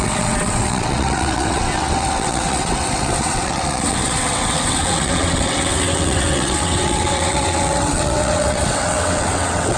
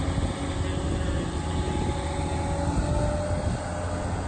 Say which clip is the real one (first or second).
second